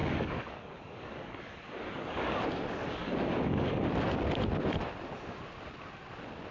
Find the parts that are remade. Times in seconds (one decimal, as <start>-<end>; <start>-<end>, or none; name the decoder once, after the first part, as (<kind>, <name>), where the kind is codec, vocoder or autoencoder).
0.0-2.4 (codec, DAC); 3.0-3.9